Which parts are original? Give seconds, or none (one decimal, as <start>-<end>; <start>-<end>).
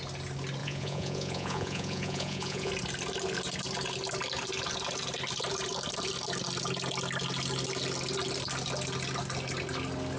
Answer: 0.0-0.6; 2.7-10.2